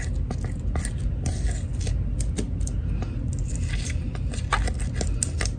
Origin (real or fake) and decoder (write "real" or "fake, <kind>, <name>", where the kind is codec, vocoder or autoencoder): real